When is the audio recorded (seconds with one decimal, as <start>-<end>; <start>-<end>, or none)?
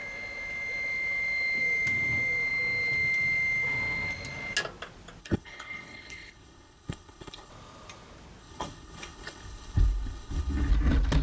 0.0-5.2; 7.5-8.4; 10.7-11.2